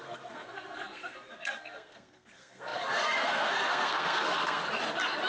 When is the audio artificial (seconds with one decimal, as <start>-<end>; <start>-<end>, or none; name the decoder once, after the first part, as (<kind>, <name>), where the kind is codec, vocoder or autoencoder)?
0.0-4.6 (codec, SNAC)